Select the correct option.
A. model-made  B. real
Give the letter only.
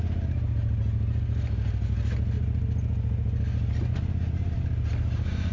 B